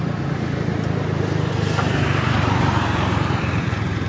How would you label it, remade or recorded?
remade